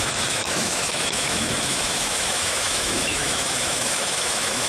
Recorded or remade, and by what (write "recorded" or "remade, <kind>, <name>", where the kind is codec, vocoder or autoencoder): remade, autoencoder, DAC-VAE